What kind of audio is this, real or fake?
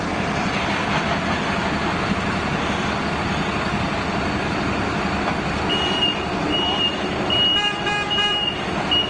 real